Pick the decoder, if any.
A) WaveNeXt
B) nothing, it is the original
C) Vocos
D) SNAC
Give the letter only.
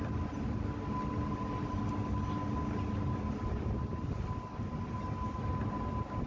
B